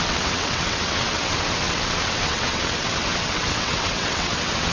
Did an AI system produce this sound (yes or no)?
yes